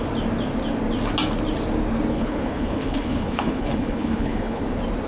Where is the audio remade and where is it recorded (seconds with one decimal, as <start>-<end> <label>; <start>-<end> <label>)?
0.0-2.1 recorded; 2.1-4.6 remade; 4.6-5.1 recorded